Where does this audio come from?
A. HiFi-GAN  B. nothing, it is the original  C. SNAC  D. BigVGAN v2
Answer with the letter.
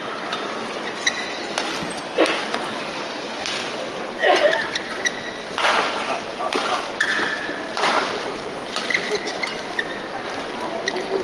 B